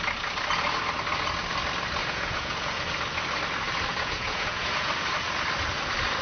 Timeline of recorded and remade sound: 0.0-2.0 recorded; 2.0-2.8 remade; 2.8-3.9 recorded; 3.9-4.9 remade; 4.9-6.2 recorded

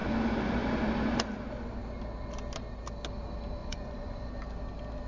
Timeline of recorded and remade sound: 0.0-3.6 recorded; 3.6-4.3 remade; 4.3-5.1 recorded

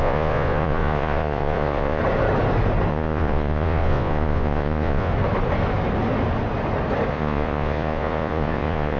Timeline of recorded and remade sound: 0.0-2.0 remade; 2.0-2.9 recorded; 2.9-5.1 remade; 5.1-7.1 recorded; 7.1-9.0 remade

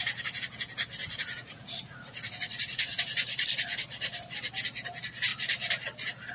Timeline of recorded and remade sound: 0.0-1.0 recorded; 1.0-3.0 remade; 3.0-6.3 recorded

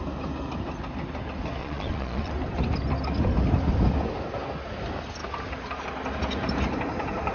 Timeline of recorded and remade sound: 0.0-1.6 recorded; 1.6-2.3 remade; 2.3-7.3 recorded